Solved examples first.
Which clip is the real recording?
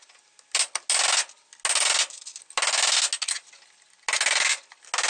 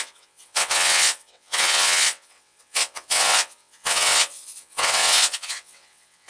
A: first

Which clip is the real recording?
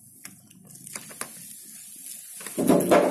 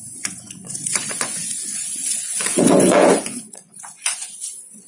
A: first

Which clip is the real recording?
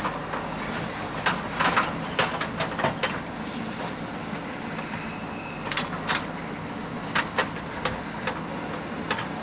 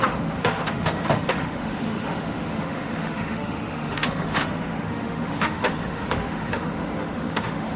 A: first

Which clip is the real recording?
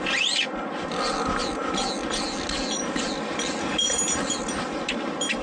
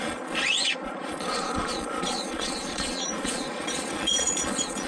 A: first